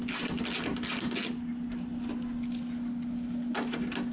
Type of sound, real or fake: real